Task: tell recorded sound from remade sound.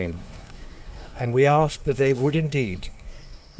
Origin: remade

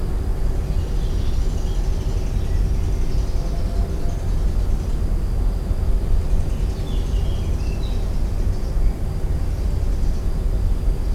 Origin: recorded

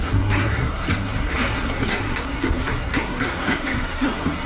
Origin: remade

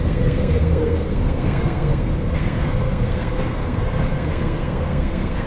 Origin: remade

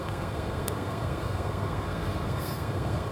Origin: remade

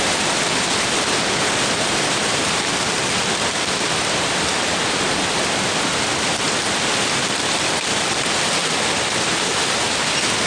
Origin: recorded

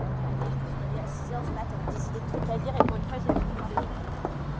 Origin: recorded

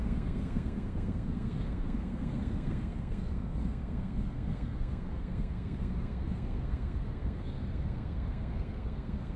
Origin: remade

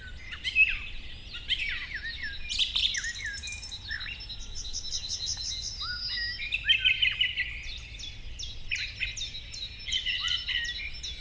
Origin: recorded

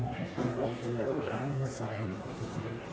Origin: remade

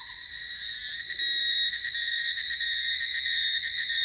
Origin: recorded